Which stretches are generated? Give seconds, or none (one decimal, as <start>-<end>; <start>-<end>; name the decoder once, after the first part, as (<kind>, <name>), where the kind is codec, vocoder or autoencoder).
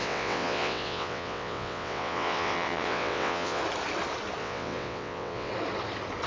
0.0-3.6 (vocoder, WaveNeXt); 4.4-5.5